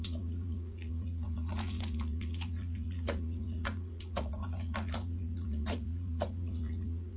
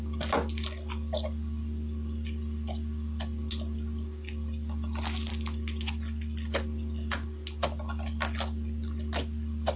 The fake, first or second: first